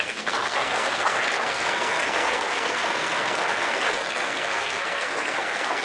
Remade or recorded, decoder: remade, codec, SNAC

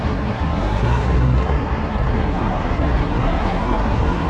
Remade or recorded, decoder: remade, codec, SNAC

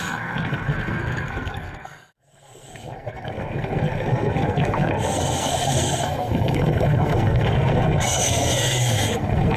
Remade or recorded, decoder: remade, codec, SNAC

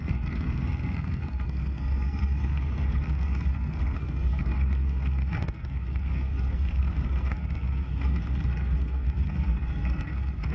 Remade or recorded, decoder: remade, codec, SNAC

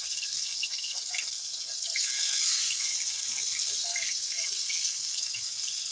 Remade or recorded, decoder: remade, codec, SNAC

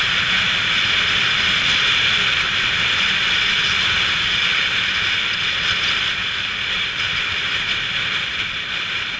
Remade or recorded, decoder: recorded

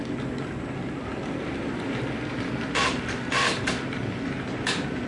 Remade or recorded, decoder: recorded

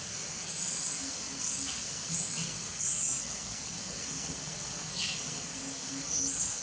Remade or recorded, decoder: remade, codec, SNAC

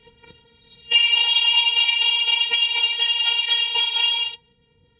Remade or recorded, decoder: remade, codec, SNAC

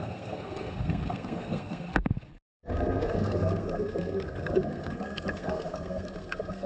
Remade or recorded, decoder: remade, codec, SNAC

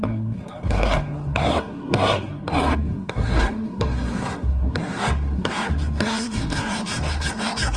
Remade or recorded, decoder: remade, codec, SNAC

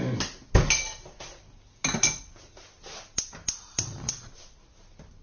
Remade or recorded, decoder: recorded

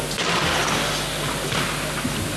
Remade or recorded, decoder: recorded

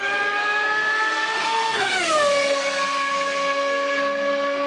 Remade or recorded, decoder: remade, codec, SNAC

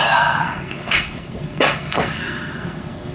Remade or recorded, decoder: remade, codec, SNAC